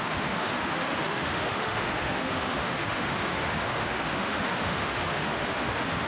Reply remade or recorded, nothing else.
remade